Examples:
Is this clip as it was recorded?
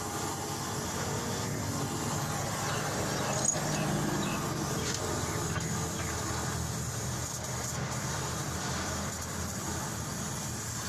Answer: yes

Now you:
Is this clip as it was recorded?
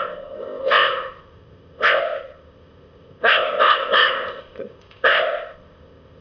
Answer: no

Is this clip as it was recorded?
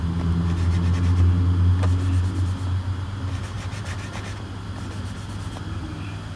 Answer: yes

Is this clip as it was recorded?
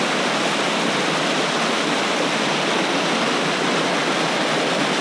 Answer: yes